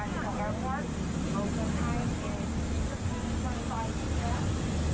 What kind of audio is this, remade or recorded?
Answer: recorded